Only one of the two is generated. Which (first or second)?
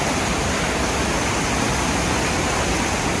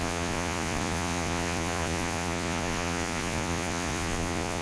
second